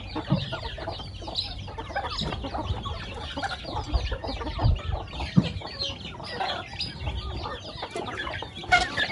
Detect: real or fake real